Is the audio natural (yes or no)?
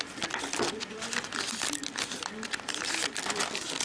yes